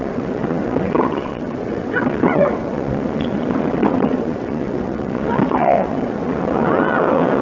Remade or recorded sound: remade